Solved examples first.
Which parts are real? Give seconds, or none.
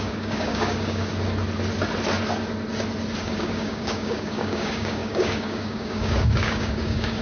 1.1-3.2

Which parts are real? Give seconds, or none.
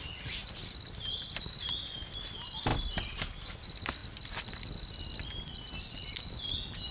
0.0-6.9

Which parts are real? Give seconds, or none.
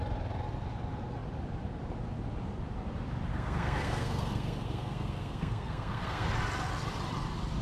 0.0-3.3; 6.3-7.6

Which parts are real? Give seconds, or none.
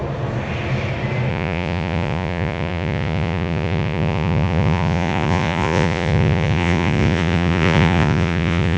0.0-1.3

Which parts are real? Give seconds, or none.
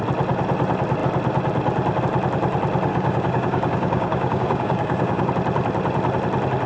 0.0-2.9; 5.3-6.7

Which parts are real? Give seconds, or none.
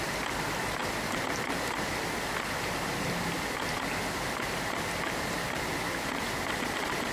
0.0-7.1